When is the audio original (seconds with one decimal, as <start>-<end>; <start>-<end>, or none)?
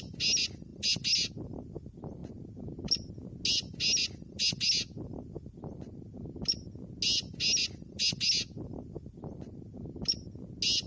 0.0-10.9